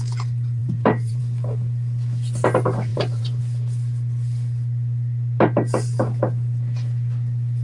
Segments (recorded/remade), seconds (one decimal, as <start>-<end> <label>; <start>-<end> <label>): 0.0-0.6 recorded; 0.6-1.2 remade; 1.2-2.9 recorded; 2.9-3.4 remade; 3.4-7.6 recorded